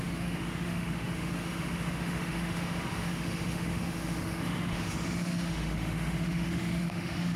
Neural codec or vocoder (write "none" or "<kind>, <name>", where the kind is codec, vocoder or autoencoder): autoencoder, DAC-VAE